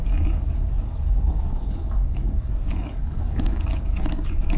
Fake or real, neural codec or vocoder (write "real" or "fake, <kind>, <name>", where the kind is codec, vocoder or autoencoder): fake, codec, DAC